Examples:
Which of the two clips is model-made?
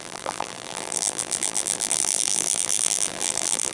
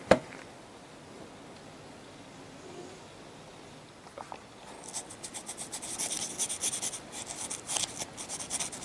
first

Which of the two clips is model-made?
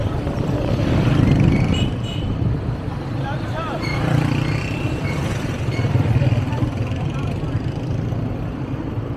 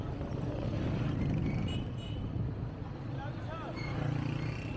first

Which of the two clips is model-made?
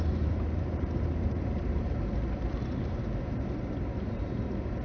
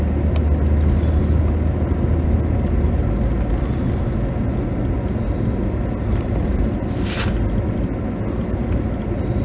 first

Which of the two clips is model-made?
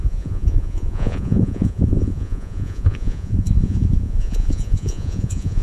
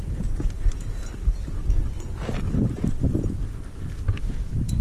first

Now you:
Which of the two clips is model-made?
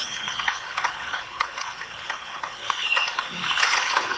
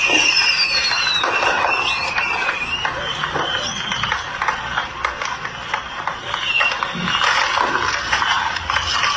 first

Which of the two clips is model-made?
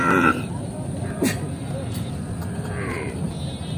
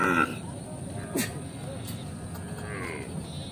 first